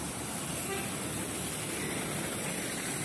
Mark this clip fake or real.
real